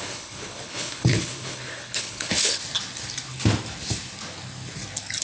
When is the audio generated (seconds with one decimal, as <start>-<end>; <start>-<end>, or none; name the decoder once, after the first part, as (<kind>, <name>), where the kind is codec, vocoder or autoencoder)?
0.0-2.6 (codec, HILCodec)